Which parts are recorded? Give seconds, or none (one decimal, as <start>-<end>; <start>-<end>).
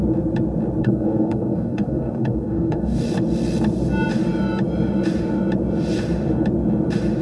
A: 0.0-0.8; 3.0-7.2